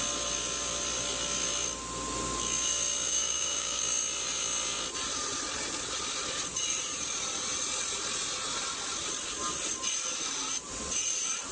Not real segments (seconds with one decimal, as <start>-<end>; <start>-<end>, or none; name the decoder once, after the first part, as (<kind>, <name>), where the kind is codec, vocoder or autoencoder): 3.1-3.8 (codec, DAC)